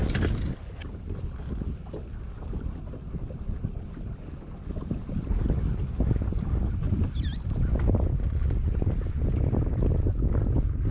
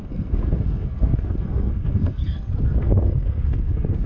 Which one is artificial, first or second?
second